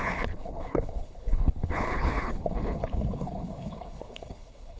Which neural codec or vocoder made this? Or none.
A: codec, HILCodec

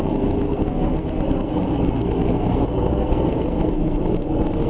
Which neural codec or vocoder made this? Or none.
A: codec, SNAC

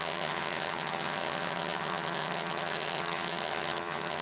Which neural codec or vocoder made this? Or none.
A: vocoder, HiFi-GAN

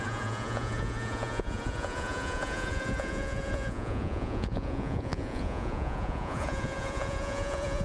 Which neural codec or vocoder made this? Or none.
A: vocoder, Vocos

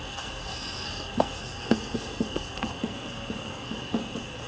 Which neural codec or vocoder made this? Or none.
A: codec, SNAC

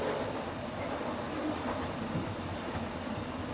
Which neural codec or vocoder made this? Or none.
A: none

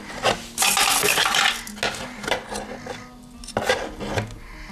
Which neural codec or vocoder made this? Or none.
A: none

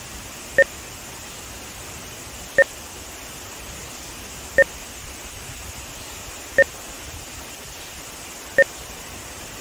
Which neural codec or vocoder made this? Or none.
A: none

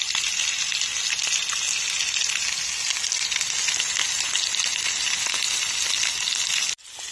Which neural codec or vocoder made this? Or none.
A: none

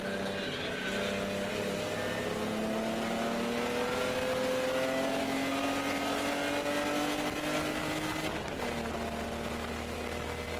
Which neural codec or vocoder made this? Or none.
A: none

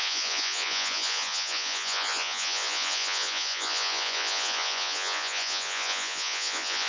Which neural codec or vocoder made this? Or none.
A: vocoder, Vocos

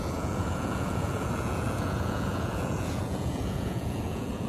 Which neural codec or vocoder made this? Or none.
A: vocoder, Vocos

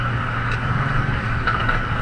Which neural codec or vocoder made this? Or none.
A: codec, DAC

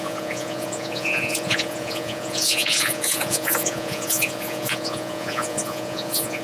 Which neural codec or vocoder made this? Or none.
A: vocoder, Vocos